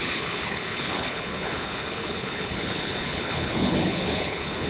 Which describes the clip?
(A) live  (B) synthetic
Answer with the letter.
B